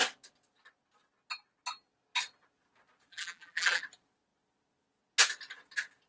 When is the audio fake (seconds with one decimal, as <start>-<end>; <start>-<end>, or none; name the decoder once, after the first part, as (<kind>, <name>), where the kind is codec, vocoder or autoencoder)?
3.1-3.8 (vocoder, BigVGAN v2)